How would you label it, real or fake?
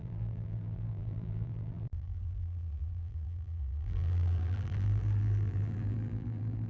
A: fake